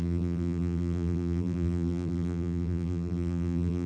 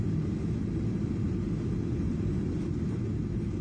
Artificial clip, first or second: first